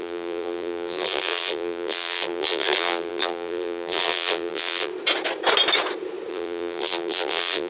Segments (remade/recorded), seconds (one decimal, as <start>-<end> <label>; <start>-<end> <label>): 0.0-4.9 remade; 4.9-6.3 recorded; 6.3-7.7 remade